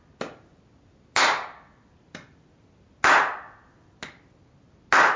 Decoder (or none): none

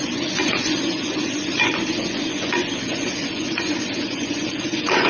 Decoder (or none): vocoder, Vocos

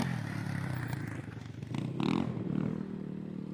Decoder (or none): none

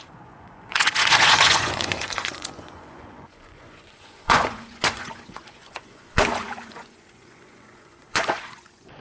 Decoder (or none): vocoder, Vocos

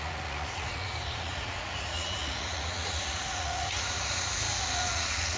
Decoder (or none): vocoder, Vocos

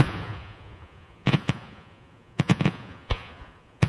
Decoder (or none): vocoder, Vocos